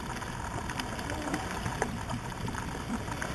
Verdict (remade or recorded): recorded